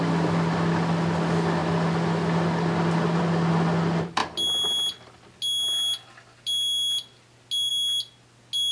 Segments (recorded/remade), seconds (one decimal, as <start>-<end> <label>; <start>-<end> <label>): 0.0-8.7 recorded